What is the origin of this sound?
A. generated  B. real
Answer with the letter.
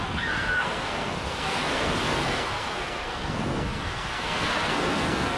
A